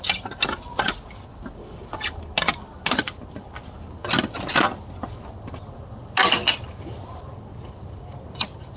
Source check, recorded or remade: recorded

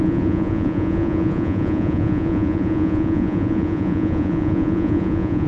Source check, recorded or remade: remade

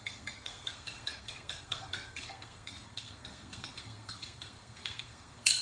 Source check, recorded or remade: remade